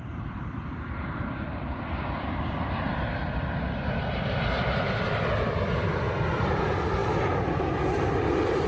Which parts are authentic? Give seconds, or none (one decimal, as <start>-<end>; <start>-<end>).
3.2-3.7